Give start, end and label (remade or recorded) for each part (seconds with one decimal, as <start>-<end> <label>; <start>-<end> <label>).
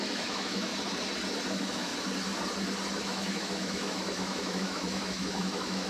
0.0-0.7 remade; 0.7-1.5 recorded; 1.5-1.9 remade; 1.9-3.0 recorded; 3.0-5.9 remade